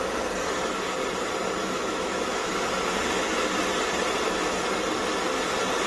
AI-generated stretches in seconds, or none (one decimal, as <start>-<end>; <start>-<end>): 1.6-2.5